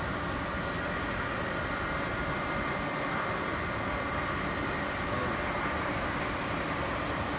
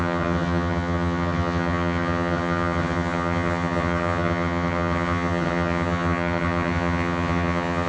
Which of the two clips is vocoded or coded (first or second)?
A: second